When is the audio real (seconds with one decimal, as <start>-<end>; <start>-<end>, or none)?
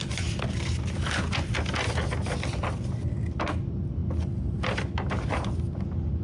0.0-6.2